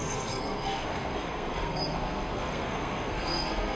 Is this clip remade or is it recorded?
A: remade